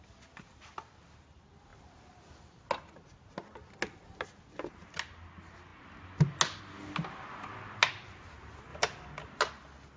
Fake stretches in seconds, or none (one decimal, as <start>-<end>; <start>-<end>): 8.7-9.4